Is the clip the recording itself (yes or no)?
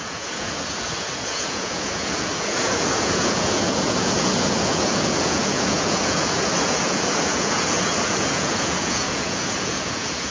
no